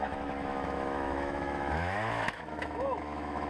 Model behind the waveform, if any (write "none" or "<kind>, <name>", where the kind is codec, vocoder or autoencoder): autoencoder, DAC-VAE